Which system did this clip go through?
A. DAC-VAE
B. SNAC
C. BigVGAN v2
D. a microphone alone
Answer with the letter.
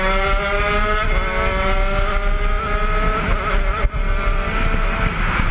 D